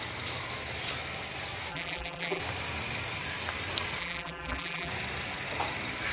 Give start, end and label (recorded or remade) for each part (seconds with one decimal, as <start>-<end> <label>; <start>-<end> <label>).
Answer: 0.0-1.7 recorded; 1.7-2.4 remade; 2.4-4.0 recorded; 4.0-4.9 remade; 4.9-6.1 recorded